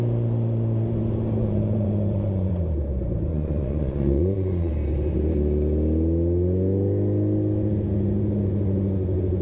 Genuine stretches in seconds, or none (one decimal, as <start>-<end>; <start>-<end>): 0.0-1.4; 2.5-3.3; 4.7-9.4